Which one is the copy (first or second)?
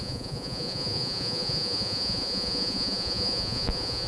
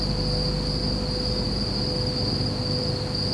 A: first